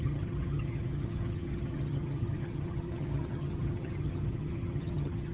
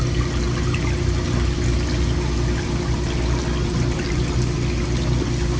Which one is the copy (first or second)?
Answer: first